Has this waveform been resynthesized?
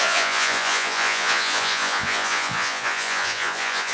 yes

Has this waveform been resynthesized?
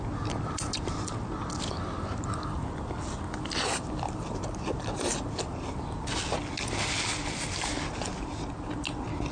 no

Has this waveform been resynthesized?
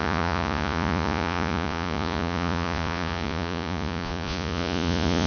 yes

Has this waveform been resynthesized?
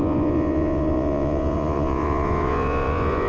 yes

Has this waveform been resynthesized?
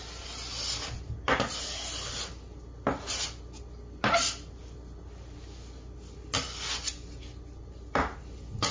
no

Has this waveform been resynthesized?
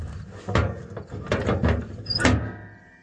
no